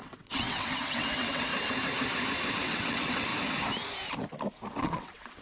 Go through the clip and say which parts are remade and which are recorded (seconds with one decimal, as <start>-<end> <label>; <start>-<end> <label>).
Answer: 0.0-1.5 remade; 1.5-2.5 recorded; 2.5-3.3 remade; 3.3-4.8 recorded; 4.8-5.4 remade